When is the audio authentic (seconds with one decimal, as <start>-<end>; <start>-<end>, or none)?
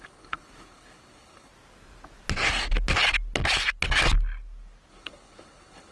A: 1.5-4.9